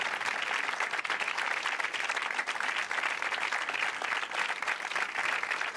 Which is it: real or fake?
real